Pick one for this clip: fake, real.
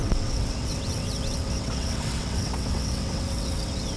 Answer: fake